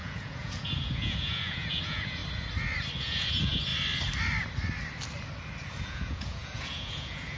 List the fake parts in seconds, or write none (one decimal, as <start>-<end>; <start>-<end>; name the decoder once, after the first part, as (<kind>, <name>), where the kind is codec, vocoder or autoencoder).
0.0-2.2 (vocoder, Vocos); 3.0-3.7; 5.8-7.4